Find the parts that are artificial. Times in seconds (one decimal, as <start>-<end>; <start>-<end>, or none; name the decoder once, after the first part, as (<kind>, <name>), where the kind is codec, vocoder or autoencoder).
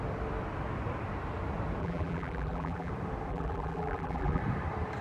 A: 1.8-2.9 (vocoder, BigVGAN v2); 3.3-4.4